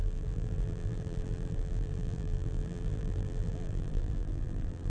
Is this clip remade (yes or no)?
yes